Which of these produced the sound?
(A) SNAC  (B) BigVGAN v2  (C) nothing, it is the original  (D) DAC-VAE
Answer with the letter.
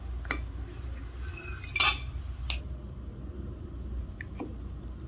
C